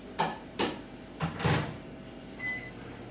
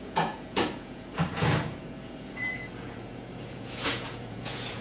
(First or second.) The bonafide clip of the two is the first